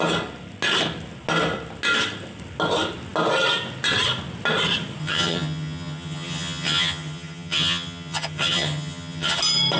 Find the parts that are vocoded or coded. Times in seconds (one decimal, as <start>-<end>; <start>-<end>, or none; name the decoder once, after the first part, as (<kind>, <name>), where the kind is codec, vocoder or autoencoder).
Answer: 5.0-9.4 (vocoder, HiFi-GAN)